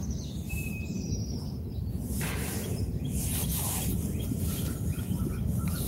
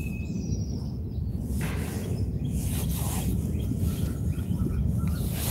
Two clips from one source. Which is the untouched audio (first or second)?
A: second